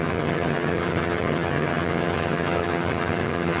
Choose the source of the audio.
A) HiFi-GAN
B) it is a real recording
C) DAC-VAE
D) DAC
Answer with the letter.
A